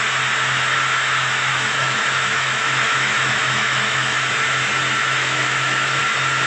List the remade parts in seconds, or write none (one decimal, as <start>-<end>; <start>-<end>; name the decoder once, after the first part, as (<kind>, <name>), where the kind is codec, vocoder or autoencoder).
1.5-4.3 (autoencoder, DAC-VAE); 5.0-6.0